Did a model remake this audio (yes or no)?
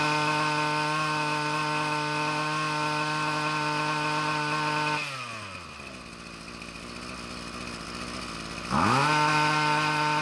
no